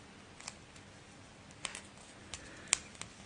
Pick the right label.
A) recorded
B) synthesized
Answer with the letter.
A